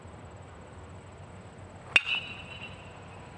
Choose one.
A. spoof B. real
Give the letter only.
B